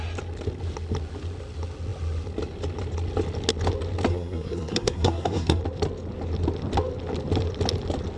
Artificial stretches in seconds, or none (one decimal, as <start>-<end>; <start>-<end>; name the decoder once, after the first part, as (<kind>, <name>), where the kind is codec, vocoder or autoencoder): 4.1-5.6 (codec, SNAC)